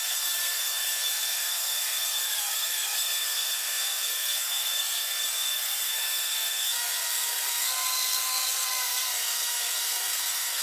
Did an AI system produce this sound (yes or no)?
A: yes